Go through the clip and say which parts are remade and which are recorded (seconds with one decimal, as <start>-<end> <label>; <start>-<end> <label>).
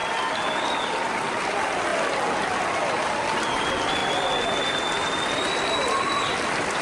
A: 0.0-1.5 remade; 1.5-4.0 recorded; 4.0-4.6 remade; 4.6-5.0 recorded; 5.0-6.8 remade